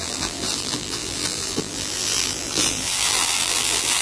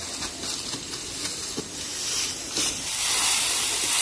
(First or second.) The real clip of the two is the second